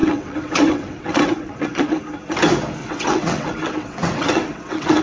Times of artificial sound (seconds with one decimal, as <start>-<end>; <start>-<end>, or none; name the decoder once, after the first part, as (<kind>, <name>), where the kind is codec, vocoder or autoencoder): 0.0-2.0 (vocoder, WaveNeXt); 2.8-5.0